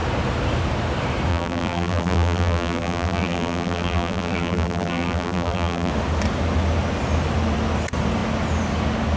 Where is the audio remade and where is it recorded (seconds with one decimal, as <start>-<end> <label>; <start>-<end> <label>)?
0.0-1.3 recorded; 1.3-5.9 remade; 5.9-9.2 recorded